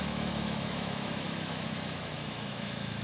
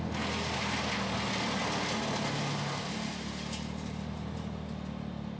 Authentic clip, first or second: second